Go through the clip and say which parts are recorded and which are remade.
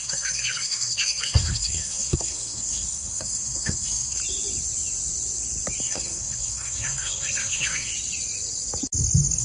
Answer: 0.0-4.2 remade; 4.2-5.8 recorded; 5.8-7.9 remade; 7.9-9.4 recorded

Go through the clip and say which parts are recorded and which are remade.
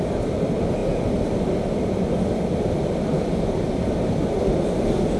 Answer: 0.0-5.2 remade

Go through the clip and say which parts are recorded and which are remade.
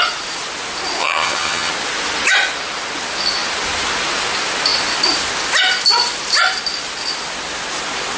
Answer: 0.0-1.0 recorded; 1.0-1.7 remade; 1.7-8.2 recorded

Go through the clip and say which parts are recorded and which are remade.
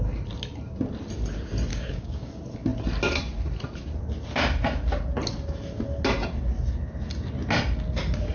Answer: 0.0-1.7 recorded; 1.7-2.3 remade; 2.3-8.3 recorded